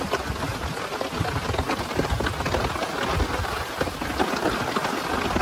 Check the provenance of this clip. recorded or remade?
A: recorded